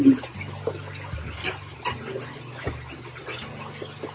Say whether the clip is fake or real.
real